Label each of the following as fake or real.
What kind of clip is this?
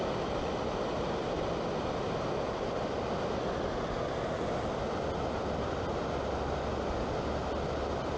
real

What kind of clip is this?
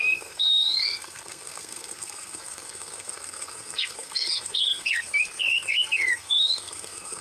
fake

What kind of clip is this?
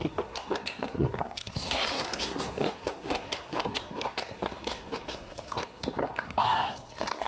fake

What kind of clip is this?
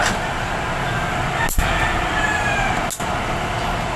real